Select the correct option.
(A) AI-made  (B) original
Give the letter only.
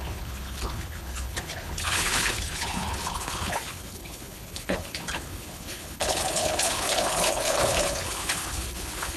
A